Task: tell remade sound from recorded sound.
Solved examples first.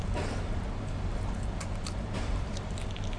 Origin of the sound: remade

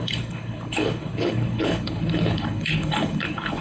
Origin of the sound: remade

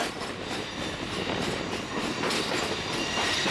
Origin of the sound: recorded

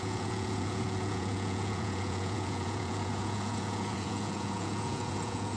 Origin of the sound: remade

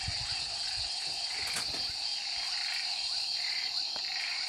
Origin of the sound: recorded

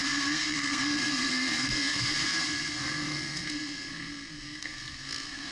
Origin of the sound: remade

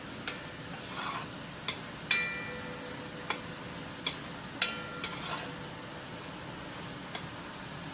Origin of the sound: recorded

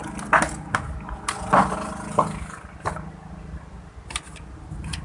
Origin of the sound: recorded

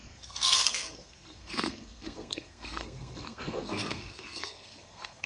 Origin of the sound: remade